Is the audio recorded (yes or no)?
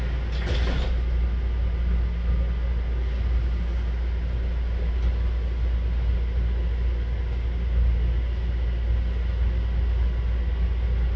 yes